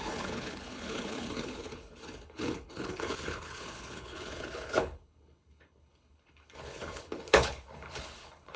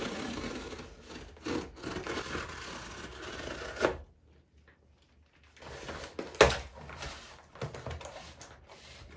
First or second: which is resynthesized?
first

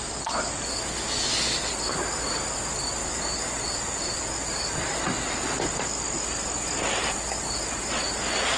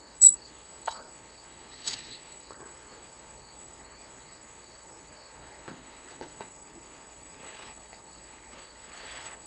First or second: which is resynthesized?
second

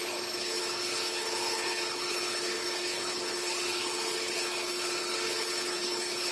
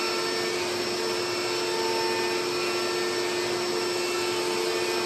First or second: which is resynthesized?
first